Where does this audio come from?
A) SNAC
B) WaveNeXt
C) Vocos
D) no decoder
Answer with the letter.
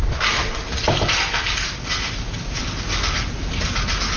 D